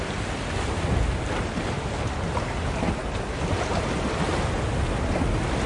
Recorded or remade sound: recorded